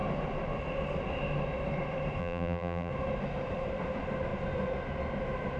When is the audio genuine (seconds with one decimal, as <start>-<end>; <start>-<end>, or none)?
0.0-2.2; 2.9-5.6